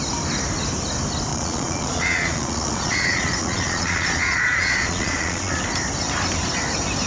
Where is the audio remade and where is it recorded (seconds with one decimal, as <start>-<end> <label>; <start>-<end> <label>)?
0.0-1.3 recorded; 1.3-5.6 remade; 5.6-7.1 recorded